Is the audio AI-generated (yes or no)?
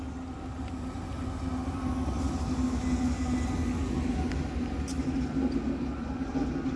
no